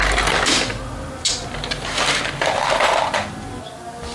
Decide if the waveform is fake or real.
real